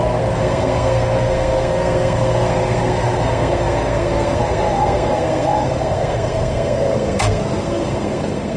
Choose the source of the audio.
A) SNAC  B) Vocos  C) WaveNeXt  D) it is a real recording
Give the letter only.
A